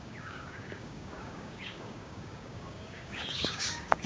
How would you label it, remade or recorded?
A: remade